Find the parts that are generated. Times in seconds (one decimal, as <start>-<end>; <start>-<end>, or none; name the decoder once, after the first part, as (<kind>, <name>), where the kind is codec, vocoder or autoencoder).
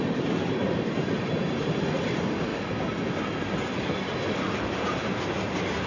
0.0-2.5 (vocoder, BigVGAN v2); 4.8-5.9